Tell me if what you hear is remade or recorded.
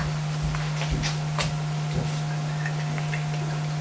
recorded